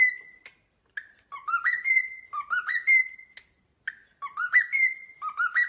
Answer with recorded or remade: recorded